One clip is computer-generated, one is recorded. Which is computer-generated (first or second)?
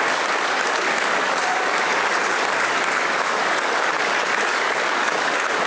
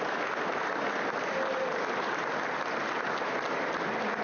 first